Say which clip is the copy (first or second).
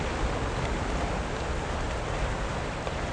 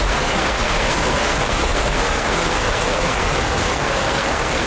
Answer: second